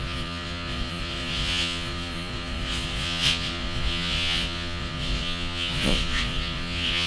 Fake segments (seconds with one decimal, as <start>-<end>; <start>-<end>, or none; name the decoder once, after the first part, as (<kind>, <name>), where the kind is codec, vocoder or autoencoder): 0.0-7.1 (vocoder, Vocos)